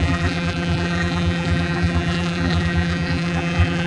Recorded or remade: remade